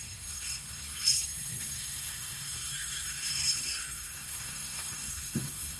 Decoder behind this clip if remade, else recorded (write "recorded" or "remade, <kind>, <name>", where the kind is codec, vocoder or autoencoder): remade, codec, SNAC